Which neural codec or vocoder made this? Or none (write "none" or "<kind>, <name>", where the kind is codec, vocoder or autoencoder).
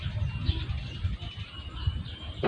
none